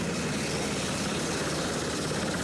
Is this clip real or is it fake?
real